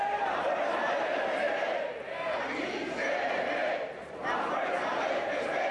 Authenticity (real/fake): fake